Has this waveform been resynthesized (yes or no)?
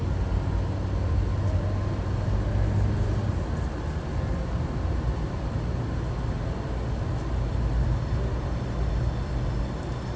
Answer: no